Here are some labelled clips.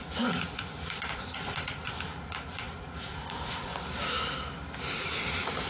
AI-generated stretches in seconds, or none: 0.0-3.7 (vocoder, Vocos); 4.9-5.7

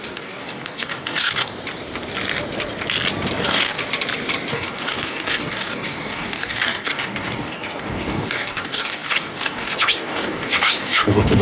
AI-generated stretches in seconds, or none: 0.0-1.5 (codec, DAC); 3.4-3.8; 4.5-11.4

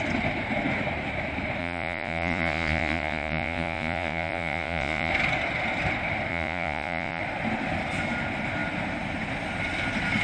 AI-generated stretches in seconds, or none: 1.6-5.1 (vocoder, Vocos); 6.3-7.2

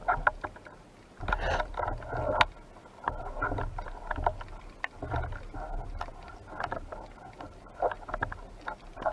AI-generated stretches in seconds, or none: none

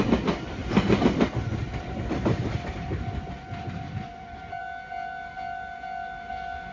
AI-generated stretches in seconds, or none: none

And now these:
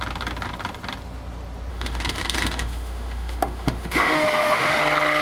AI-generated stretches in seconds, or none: 1.7-4.8 (autoencoder, DAC-VAE)

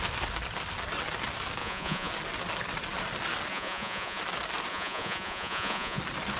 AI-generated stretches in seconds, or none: 1.6-2.1 (vocoder, Vocos); 3.5-4.2; 4.7-6.0

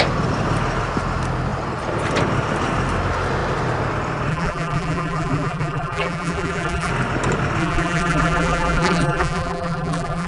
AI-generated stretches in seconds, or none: 4.3-6.9 (vocoder, BigVGAN v2); 7.6-10.3